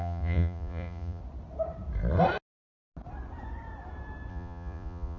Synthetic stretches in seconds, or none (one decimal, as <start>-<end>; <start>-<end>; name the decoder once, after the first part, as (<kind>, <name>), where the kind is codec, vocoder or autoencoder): 0.0-1.2 (vocoder, Vocos); 4.3-5.2